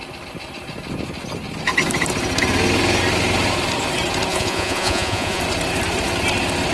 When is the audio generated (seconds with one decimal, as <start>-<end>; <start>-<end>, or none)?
4.3-5.4